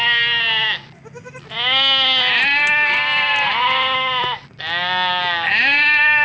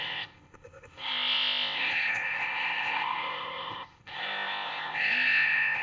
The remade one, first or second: second